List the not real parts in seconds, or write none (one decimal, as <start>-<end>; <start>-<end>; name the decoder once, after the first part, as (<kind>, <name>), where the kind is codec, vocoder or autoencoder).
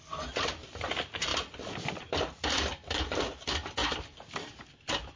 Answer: 1.3-3.4 (vocoder, BigVGAN v2); 3.8-4.4